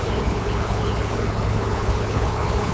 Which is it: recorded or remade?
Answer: remade